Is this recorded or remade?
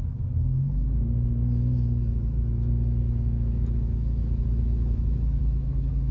remade